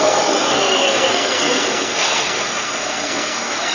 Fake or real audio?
fake